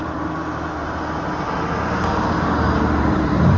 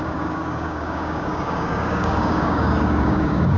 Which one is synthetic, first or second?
second